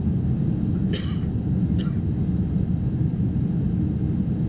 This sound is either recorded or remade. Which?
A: recorded